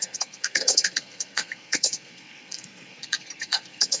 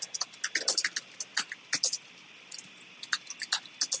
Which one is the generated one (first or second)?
first